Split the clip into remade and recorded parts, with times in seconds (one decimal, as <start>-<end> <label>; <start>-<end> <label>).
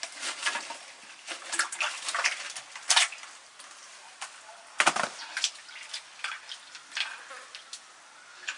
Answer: 0.0-0.4 recorded; 0.4-2.3 remade; 2.3-3.8 recorded; 3.8-6.0 remade; 6.0-8.6 recorded